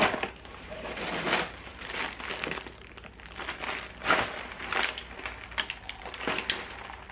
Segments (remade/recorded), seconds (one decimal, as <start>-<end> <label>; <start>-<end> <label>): 0.0-7.1 recorded